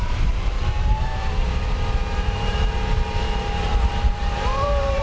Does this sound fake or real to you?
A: fake